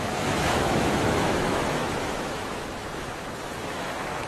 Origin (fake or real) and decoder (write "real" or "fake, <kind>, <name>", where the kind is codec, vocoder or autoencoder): fake, autoencoder, DAC-VAE